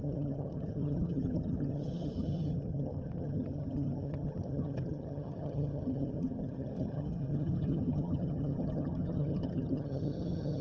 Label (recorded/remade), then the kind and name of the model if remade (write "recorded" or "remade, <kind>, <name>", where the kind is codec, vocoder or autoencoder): remade, vocoder, HiFi-GAN